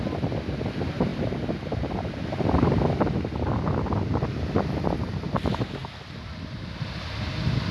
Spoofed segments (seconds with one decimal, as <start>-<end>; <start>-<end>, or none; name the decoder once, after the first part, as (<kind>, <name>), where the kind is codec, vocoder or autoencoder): none